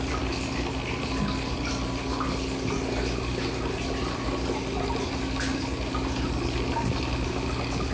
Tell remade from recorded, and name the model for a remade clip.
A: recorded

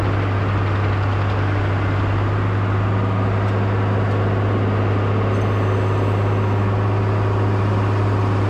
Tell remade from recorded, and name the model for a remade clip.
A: recorded